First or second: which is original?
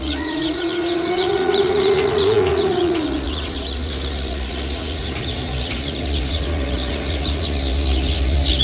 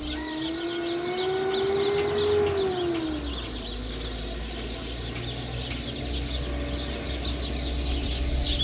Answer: second